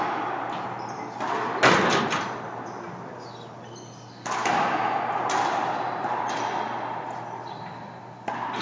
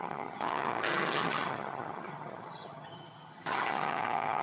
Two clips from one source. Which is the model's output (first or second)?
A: second